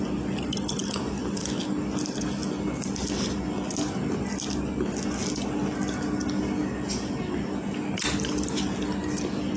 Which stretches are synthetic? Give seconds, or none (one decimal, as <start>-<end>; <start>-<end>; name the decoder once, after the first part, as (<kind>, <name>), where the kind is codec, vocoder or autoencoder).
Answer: 0.8-1.6 (vocoder, BigVGAN v2)